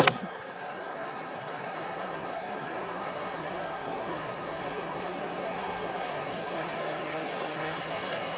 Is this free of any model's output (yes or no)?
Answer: no